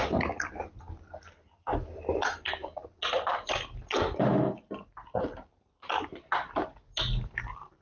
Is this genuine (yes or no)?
yes